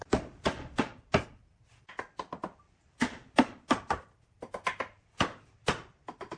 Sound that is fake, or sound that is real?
real